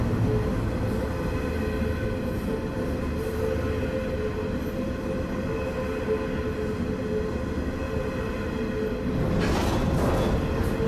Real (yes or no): yes